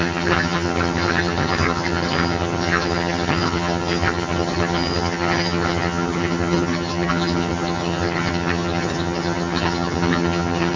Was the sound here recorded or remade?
remade